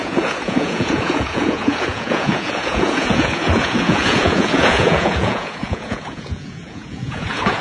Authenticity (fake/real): fake